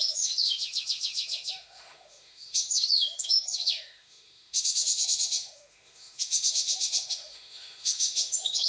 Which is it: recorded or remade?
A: remade